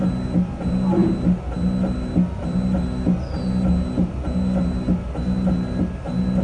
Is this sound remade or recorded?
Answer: recorded